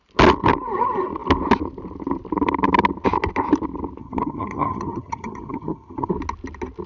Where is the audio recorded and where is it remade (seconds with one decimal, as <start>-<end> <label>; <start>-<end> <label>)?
0.0-4.0 recorded; 4.0-6.1 remade; 6.1-6.9 recorded